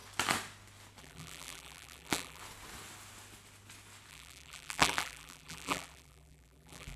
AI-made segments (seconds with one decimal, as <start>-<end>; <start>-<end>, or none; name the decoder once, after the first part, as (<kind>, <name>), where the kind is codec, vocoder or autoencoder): 1.0-2.4 (vocoder, BigVGAN v2); 4.1-7.0